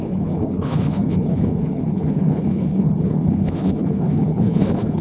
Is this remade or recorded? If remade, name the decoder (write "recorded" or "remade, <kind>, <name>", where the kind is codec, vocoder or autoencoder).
remade, codec, HILCodec